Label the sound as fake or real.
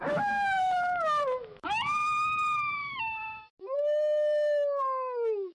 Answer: fake